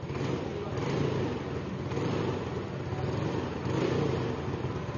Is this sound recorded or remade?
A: recorded